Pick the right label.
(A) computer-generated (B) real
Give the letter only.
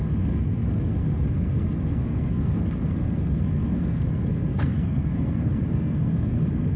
A